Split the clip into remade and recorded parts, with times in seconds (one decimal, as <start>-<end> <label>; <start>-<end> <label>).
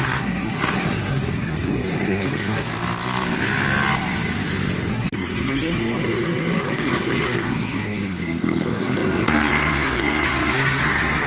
0.0-2.7 remade; 2.7-4.9 recorded; 4.9-11.3 remade